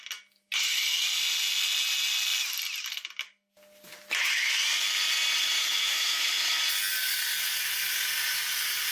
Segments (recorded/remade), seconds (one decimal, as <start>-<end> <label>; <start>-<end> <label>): 0.0-5.6 recorded; 5.6-6.6 remade; 6.6-8.9 recorded